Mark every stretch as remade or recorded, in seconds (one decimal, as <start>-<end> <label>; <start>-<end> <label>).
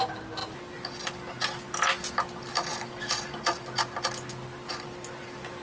0.0-5.6 recorded